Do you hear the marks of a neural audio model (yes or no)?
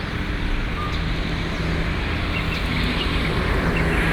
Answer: no